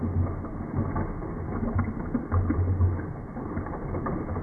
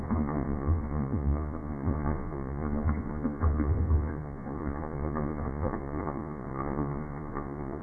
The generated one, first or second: second